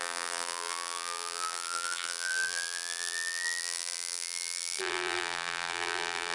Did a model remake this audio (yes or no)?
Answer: yes